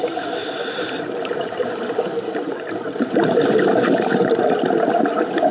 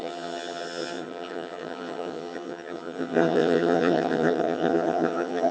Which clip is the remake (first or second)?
second